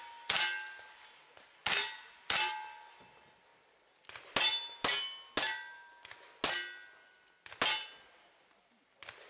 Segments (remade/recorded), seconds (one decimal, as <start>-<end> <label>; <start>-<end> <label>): 0.0-9.3 recorded